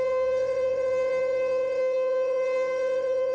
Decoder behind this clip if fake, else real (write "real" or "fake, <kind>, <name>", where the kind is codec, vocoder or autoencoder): fake, vocoder, WaveNeXt